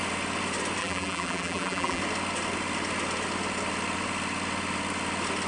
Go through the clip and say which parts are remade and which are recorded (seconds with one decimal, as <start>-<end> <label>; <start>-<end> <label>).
0.0-0.8 recorded; 0.8-2.0 remade; 2.0-5.5 recorded